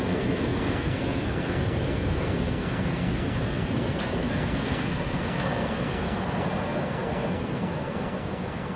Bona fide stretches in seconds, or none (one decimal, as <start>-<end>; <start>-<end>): none